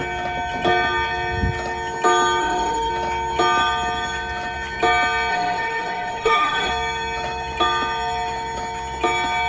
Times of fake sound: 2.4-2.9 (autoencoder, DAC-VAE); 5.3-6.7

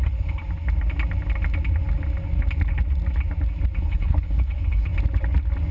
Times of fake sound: 0.0-0.4 (codec, HILCodec); 3.8-4.9

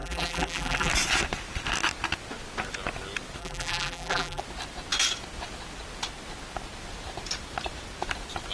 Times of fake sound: 0.0-0.9 (vocoder, BigVGAN v2); 3.4-4.4

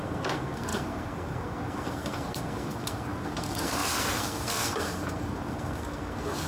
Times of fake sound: 0.0-6.5 (codec, SNAC)

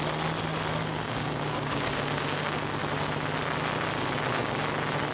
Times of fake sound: 0.8-2.8 (codec, DAC)

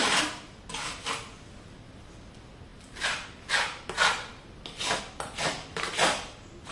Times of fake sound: none

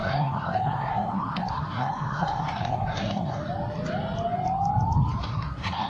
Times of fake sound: 0.0-3.4 (codec, SNAC); 5.2-5.9